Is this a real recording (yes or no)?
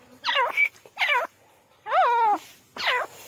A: yes